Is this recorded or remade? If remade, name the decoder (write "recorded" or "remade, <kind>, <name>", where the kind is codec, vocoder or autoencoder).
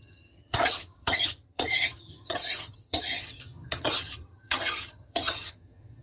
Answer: remade, vocoder, HiFi-GAN